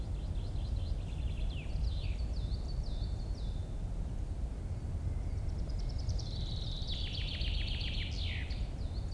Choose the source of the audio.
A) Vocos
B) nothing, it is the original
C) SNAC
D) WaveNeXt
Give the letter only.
B